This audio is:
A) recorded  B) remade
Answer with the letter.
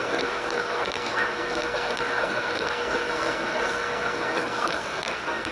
B